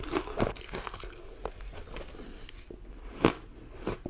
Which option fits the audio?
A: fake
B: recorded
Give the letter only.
B